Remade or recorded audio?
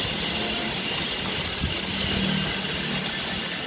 recorded